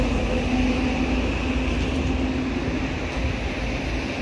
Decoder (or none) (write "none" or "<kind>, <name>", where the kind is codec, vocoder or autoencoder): none